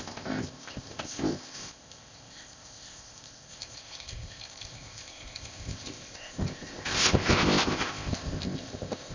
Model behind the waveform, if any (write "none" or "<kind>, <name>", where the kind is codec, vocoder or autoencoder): codec, ZipCodec